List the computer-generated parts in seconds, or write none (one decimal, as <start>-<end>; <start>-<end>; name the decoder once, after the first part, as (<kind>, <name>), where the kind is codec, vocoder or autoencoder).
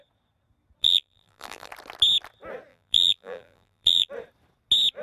0.8-1.7 (vocoder, BigVGAN v2); 2.7-4.1